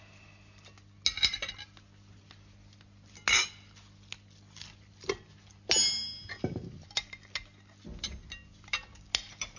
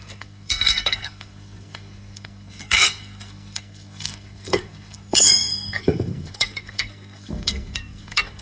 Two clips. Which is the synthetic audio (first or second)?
second